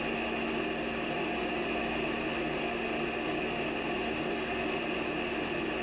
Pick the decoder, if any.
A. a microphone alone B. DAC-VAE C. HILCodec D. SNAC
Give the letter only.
A